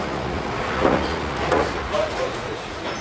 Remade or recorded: remade